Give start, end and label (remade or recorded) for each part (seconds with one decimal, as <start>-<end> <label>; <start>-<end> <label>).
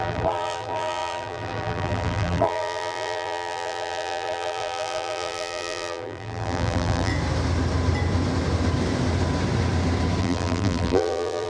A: 0.0-7.1 remade; 7.1-10.2 recorded; 10.2-11.5 remade